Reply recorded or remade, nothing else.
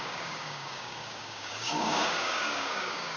remade